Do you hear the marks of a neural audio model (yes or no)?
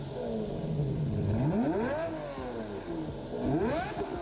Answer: no